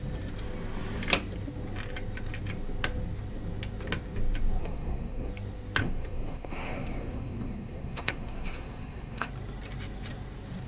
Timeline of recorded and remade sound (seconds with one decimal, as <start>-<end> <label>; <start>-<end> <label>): 0.0-4.6 recorded; 4.6-5.3 remade; 5.3-5.8 recorded; 5.8-9.3 remade; 9.3-10.7 recorded